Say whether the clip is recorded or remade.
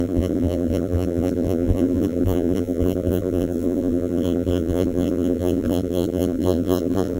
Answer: remade